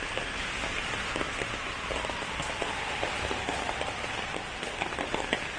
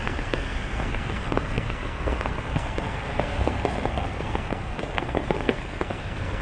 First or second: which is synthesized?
second